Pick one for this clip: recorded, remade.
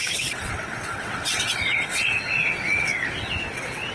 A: remade